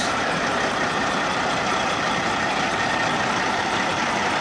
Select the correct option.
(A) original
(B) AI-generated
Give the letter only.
B